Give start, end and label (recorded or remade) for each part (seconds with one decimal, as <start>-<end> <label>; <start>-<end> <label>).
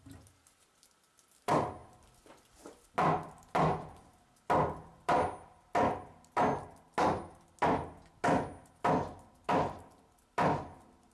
0.0-11.1 recorded